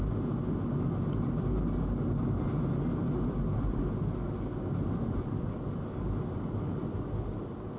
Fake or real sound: real